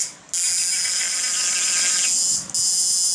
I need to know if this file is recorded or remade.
recorded